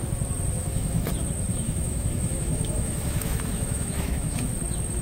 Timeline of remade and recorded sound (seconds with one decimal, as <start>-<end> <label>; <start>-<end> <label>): 0.0-0.6 recorded; 0.6-1.1 remade; 1.1-1.5 recorded; 1.5-4.5 remade; 4.5-5.0 recorded